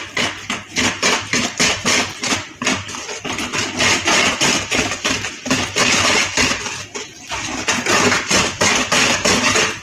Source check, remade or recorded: recorded